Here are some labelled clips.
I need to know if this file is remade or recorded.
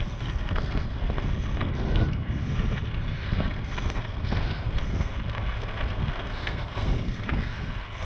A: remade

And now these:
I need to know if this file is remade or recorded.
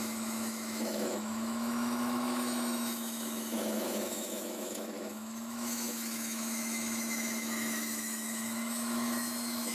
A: remade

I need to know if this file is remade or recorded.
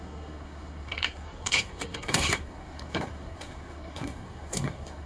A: remade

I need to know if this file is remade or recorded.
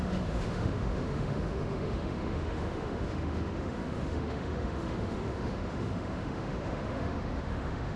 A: remade